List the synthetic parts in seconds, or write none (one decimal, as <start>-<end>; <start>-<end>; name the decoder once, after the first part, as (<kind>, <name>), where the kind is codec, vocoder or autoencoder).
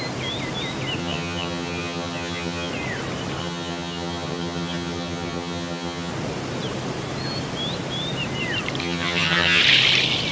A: 1.0-2.7 (vocoder, HiFi-GAN); 3.4-6.1; 8.8-9.6